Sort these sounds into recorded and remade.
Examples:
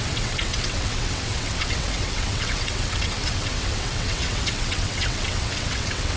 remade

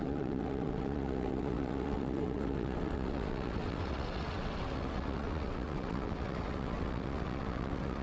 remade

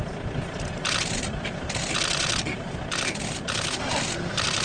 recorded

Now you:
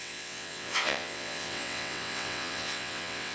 remade